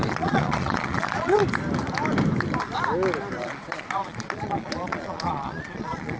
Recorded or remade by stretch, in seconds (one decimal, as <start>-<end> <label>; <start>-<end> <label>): 0.0-1.4 remade; 1.4-3.4 recorded; 3.4-6.2 remade